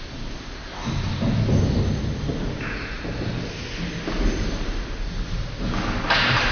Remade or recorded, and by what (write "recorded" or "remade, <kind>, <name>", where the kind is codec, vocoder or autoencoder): recorded